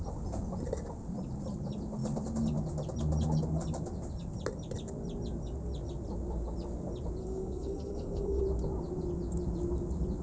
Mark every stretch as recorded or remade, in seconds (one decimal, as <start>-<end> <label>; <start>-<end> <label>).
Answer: 0.0-7.2 recorded; 7.2-8.4 remade; 8.4-10.2 recorded